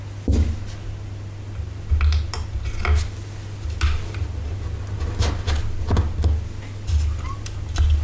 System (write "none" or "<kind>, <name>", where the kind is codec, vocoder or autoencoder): none